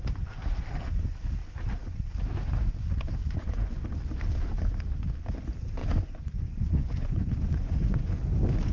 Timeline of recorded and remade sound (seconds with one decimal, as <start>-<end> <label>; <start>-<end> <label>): 0.0-3.2 recorded; 3.2-3.9 remade; 3.9-5.8 recorded; 5.8-8.2 remade; 8.2-8.7 recorded